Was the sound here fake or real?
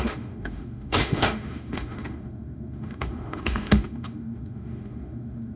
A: fake